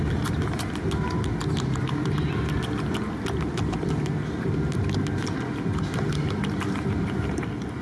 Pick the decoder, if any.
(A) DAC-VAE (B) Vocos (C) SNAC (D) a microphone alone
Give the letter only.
D